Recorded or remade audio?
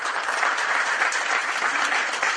recorded